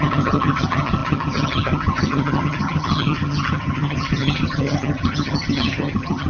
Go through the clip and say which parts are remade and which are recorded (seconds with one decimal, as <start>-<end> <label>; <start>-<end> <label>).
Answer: 0.0-6.3 remade